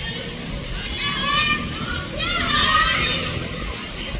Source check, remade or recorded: recorded